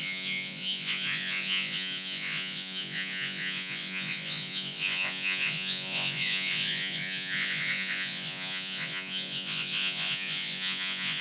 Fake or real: fake